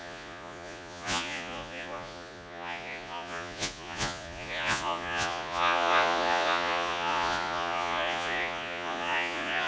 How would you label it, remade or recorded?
remade